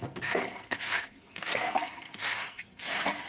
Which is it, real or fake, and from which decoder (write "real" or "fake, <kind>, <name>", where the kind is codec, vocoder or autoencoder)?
fake, codec, SNAC